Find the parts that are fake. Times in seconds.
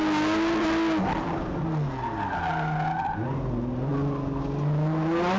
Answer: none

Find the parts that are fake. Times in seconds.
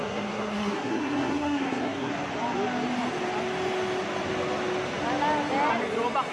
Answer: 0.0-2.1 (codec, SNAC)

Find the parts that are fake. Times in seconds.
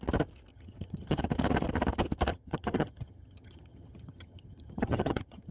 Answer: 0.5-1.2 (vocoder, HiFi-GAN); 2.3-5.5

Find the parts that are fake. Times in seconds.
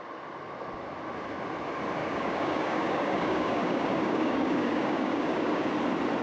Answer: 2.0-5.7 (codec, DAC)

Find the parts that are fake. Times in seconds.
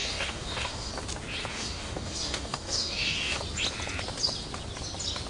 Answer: 0.0-0.9 (codec, DAC); 1.5-3.4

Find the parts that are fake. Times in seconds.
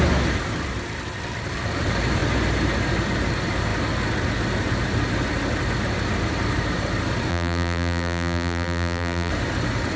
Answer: 7.3-9.3 (vocoder, BigVGAN v2)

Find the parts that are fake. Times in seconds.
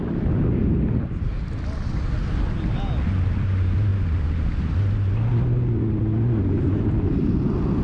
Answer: none